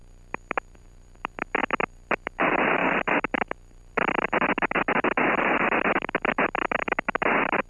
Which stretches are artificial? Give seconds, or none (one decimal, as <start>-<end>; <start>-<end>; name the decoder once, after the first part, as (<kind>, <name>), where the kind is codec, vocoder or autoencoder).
0.0-7.7 (vocoder, BigVGAN v2)